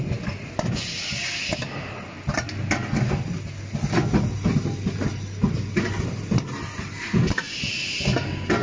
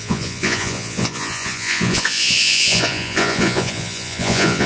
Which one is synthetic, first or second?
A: second